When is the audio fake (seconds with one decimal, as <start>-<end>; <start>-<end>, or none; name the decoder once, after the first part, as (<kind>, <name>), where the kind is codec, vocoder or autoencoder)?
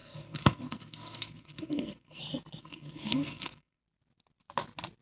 0.0-2.2 (codec, SNAC); 2.6-3.8